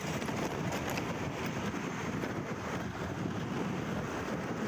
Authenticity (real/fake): real